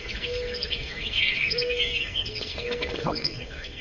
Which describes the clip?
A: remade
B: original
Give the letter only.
A